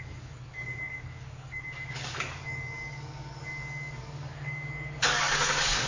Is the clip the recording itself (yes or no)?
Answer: no